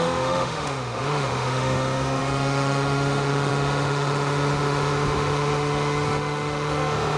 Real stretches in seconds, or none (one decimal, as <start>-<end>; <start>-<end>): none